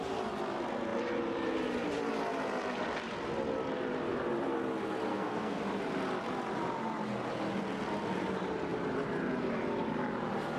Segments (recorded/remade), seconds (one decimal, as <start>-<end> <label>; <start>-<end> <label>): 0.0-5.1 recorded; 5.1-5.6 remade; 5.6-10.6 recorded